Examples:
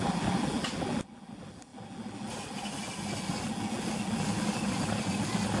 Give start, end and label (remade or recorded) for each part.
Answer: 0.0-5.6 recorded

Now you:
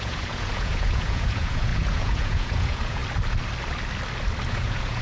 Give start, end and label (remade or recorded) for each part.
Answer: 0.0-3.0 remade; 3.0-4.5 recorded; 4.5-5.0 remade